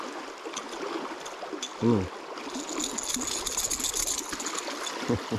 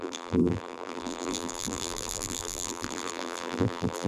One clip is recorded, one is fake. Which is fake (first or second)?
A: second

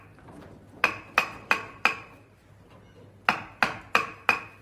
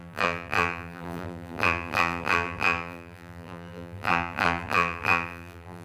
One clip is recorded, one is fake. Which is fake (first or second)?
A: second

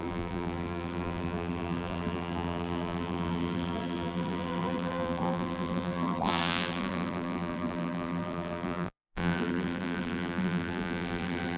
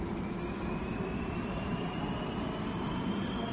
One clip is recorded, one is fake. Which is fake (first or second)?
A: first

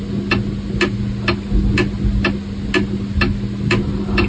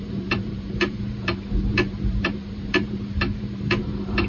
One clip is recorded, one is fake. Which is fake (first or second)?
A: second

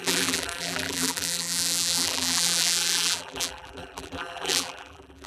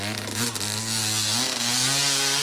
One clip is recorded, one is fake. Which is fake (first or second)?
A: first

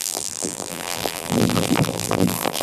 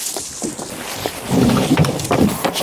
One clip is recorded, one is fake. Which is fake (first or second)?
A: first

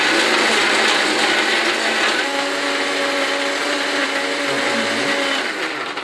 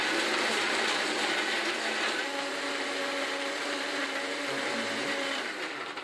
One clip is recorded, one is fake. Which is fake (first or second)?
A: second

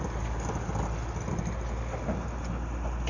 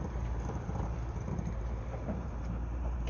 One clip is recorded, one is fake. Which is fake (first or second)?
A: second